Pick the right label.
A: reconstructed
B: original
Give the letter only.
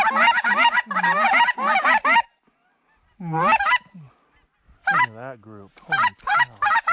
B